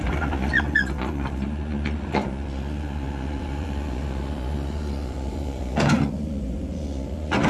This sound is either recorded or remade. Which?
remade